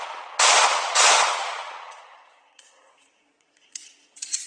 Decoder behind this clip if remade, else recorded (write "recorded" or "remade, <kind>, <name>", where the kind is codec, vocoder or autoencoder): remade, vocoder, Vocos